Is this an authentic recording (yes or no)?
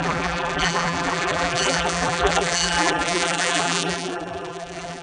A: no